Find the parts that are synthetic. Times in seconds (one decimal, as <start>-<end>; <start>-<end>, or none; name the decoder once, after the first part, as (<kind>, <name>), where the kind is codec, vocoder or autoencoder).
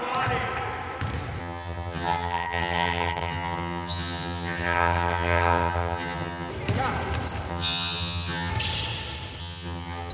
1.4-6.5 (vocoder, HiFi-GAN); 7.5-8.5; 9.4-10.1